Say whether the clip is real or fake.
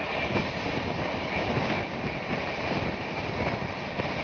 real